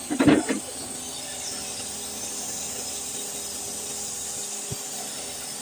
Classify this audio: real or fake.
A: real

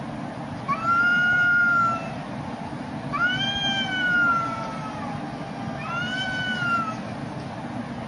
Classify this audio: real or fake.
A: real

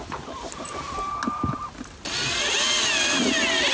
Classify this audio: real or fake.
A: real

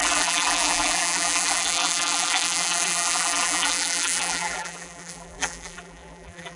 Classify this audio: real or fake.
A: fake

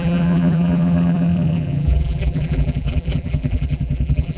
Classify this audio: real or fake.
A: fake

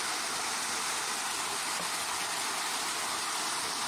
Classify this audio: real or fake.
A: real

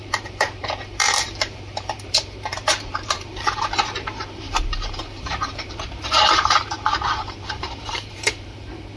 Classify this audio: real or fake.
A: fake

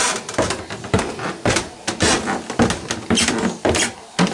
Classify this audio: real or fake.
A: real